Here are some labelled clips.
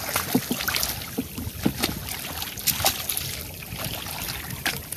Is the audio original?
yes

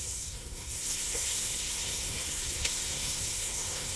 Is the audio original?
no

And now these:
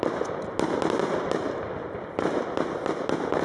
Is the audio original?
yes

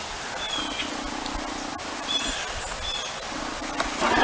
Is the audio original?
yes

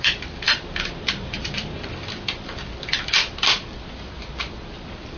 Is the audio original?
no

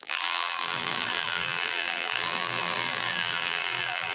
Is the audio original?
no